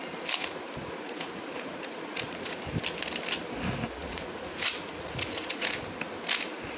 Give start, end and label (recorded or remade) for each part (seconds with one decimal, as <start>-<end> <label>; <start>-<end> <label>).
0.0-0.4 recorded; 0.4-2.6 remade; 2.6-4.0 recorded; 4.0-5.7 remade; 5.7-6.8 recorded